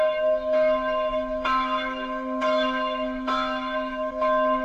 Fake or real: fake